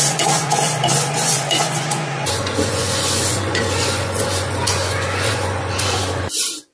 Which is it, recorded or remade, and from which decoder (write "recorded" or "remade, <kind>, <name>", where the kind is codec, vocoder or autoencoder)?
remade, vocoder, Vocos